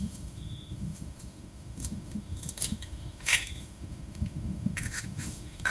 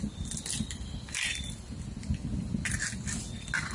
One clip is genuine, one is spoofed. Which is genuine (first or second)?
second